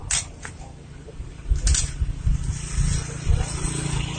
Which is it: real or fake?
real